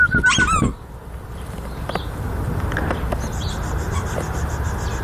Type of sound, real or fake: fake